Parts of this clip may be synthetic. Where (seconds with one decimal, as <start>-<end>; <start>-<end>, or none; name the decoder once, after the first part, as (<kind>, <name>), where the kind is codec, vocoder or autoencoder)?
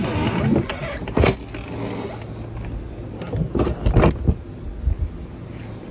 none